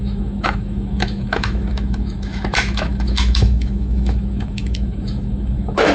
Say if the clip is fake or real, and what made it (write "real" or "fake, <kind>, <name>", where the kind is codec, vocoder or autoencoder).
fake, autoencoder, DAC-VAE